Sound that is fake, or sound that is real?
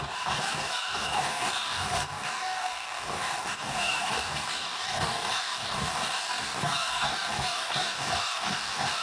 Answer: fake